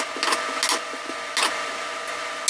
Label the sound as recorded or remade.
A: recorded